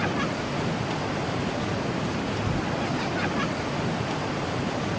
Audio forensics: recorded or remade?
recorded